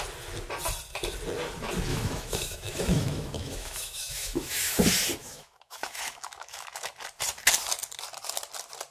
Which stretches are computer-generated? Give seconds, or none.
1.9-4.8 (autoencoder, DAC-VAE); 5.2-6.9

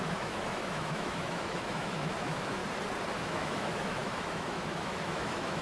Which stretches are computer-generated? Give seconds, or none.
0.0-2.6 (autoencoder, DAC-VAE); 3.2-5.6

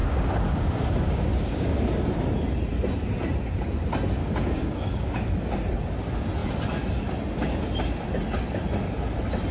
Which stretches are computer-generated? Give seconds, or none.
0.0-1.9 (codec, DAC); 4.2-5.3

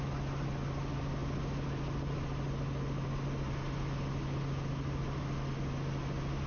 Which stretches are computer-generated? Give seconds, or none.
none

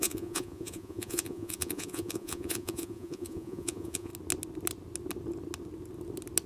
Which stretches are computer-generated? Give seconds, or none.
0.0-4.1 (vocoder, Vocos)

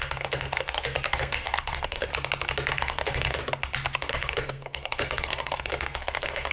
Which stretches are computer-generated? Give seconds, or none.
0.0-2.1 (codec, SNAC); 2.7-3.4; 4.1-6.5

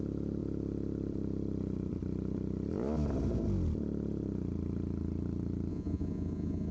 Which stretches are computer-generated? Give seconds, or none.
5.7-6.7 (vocoder, Vocos)

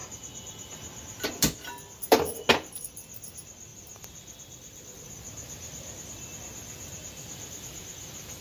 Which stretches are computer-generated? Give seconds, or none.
3.7-5.0 (vocoder, BigVGAN v2)